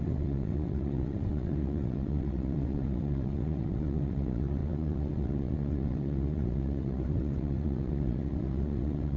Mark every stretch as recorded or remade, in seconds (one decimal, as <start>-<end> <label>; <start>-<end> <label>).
0.0-9.2 remade